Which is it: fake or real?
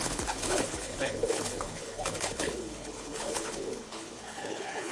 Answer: fake